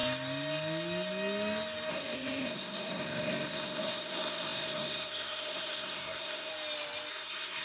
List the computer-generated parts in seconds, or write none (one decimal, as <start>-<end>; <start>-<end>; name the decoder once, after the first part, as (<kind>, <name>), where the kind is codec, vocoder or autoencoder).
1.9-6.5 (codec, SNAC); 7.1-7.6